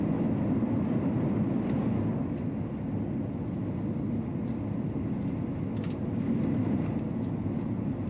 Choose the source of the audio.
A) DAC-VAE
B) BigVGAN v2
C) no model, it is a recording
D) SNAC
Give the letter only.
C